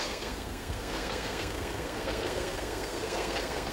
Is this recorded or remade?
remade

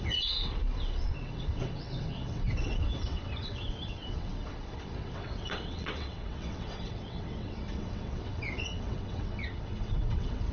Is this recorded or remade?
remade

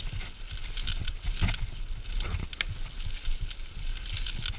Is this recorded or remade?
recorded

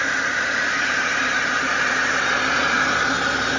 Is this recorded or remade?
remade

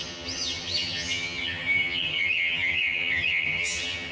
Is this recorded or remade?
remade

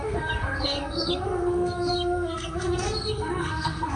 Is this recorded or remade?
remade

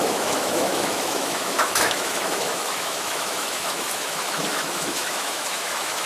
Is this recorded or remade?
remade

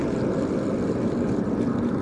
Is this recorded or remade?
recorded